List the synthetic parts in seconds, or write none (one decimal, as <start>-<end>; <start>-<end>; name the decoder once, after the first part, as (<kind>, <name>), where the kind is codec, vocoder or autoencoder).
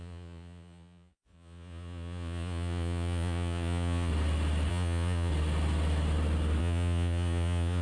0.0-4.1 (vocoder, Vocos); 4.7-5.3; 6.6-7.8